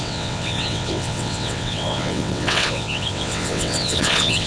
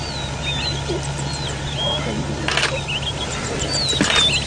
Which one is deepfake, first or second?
first